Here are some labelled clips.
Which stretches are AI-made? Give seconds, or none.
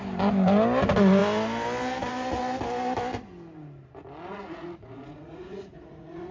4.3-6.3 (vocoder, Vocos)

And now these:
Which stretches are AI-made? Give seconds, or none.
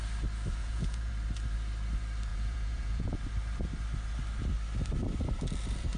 0.6-1.1 (vocoder, Vocos); 2.3-3.2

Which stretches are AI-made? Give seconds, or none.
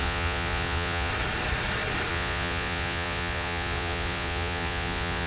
0.0-1.1 (vocoder, Vocos); 2.1-5.3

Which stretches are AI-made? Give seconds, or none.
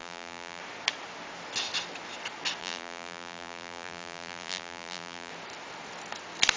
0.0-0.6 (vocoder, BigVGAN v2); 2.6-5.3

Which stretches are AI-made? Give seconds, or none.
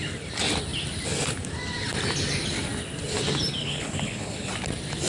3.6-4.5 (codec, HILCodec)